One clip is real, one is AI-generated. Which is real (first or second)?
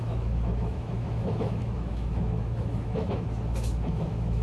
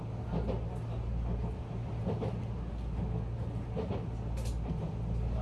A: second